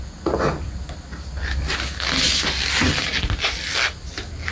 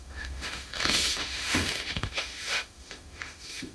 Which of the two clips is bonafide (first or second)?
first